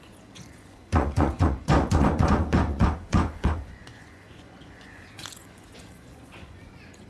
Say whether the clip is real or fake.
fake